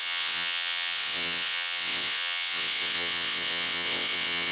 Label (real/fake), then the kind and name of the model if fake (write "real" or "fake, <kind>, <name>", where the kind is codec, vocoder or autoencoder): fake, vocoder, WaveNeXt